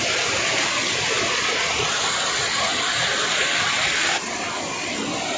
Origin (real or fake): real